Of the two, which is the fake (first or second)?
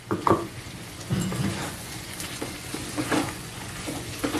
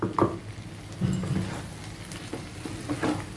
first